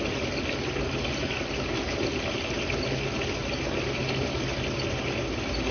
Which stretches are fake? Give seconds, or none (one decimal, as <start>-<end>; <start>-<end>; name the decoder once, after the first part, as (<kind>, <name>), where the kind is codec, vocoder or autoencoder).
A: none